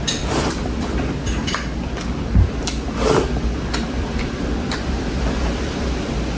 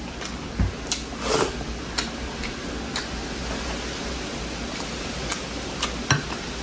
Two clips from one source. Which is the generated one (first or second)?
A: first